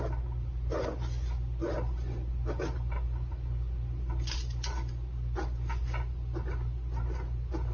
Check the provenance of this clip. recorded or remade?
recorded